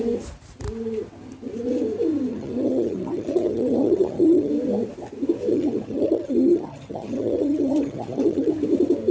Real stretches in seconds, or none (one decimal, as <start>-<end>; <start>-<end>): 0.0-2.3; 4.5-5.5; 8.5-9.1